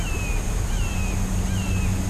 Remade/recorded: recorded